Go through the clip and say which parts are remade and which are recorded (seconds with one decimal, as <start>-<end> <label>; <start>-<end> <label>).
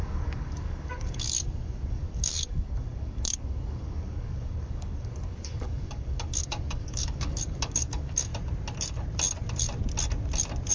0.0-8.3 remade; 8.3-10.7 recorded